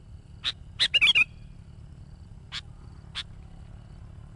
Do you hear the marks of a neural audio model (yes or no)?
no